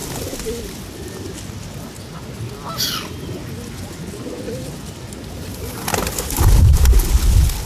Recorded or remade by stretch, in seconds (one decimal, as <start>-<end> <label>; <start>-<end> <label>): 0.0-7.7 recorded